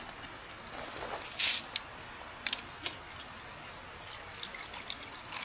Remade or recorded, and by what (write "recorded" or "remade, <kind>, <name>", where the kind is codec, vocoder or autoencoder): recorded